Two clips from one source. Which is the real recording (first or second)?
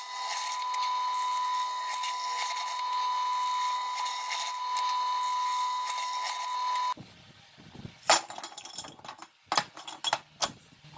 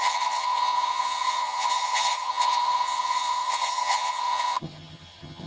first